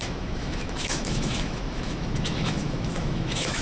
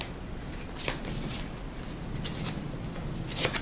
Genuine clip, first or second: second